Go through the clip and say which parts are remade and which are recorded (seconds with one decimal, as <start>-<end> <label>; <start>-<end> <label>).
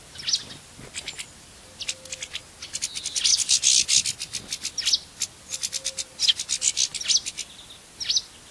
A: 0.0-3.3 recorded; 3.3-4.0 remade; 4.0-8.5 recorded